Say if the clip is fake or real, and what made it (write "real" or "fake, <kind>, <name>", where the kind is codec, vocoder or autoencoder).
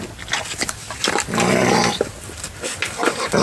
real